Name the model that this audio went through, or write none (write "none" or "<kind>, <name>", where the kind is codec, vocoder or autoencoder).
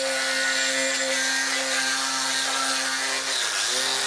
none